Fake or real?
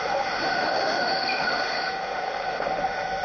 fake